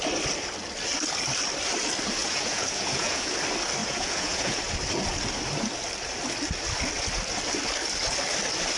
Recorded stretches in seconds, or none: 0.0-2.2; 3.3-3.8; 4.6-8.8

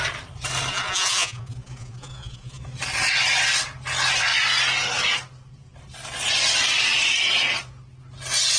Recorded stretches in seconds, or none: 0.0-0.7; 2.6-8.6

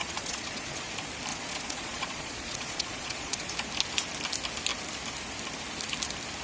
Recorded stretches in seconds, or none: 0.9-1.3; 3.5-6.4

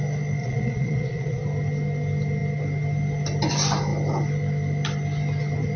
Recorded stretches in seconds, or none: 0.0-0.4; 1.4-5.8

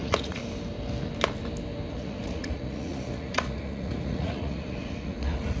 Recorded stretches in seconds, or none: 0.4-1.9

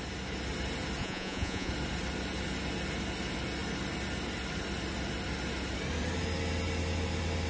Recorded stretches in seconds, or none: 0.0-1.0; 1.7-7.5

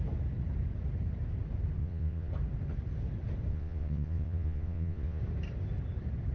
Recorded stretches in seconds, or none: 0.0-1.8; 2.3-3.5; 5.2-6.3

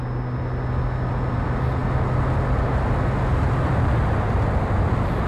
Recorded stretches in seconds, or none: 0.0-5.3